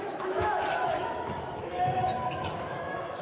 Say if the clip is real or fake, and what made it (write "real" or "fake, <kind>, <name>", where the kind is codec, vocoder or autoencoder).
fake, autoencoder, DAC-VAE